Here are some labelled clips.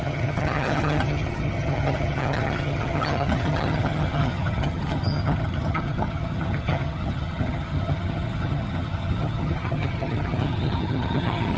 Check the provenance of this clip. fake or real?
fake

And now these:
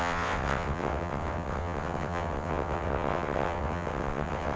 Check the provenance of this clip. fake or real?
fake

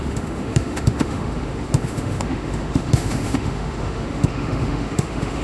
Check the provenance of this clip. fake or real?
fake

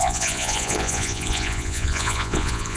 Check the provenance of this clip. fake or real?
fake